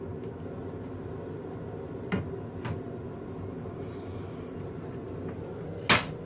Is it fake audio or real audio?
real